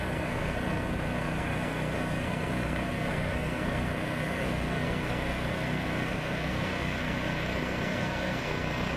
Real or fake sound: fake